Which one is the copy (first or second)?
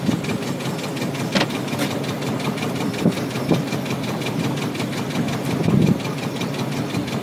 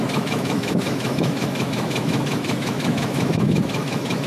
second